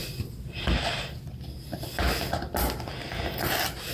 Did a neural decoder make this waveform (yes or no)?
no